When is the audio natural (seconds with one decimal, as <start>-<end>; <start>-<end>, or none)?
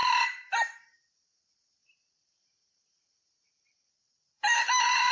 1.4-1.8